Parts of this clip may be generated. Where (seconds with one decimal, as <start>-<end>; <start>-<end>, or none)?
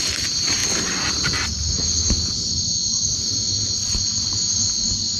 none